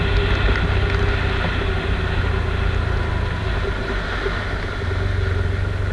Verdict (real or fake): real